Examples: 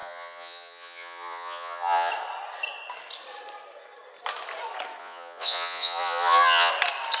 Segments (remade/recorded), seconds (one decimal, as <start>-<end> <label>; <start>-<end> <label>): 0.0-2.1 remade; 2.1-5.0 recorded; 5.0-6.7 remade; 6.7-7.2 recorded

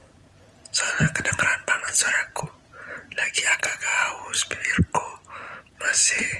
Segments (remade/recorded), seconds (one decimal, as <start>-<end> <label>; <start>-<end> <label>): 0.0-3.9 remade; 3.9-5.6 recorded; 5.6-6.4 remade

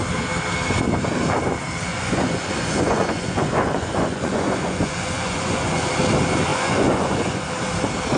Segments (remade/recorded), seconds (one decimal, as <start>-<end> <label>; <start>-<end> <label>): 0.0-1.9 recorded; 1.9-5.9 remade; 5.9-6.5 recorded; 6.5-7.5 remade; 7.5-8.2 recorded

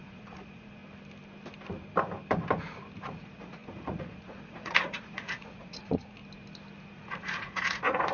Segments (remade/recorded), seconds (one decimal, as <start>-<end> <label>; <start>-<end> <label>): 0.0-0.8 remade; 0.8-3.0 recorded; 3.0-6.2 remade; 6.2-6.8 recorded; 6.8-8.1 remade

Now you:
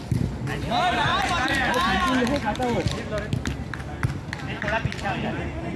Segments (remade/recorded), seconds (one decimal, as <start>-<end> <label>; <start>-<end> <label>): 0.0-5.8 recorded

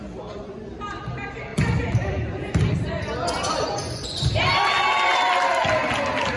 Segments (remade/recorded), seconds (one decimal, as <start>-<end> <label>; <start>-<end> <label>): 0.0-3.6 recorded; 3.6-4.2 remade; 4.2-6.4 recorded